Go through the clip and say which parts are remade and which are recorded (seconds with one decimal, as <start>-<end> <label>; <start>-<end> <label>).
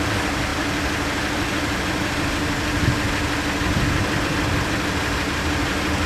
0.0-6.1 recorded